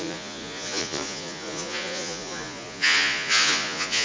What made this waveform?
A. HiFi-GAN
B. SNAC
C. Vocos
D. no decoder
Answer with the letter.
C